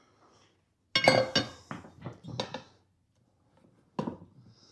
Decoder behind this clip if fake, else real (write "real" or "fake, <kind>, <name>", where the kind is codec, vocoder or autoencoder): real